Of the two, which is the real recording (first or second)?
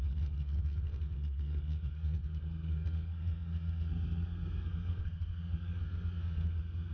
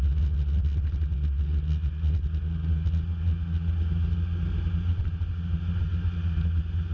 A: second